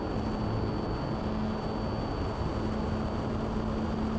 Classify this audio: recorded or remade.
recorded